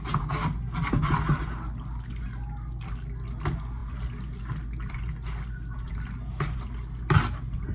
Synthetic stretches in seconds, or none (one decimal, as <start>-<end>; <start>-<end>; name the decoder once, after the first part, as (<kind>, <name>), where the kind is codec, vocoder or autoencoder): none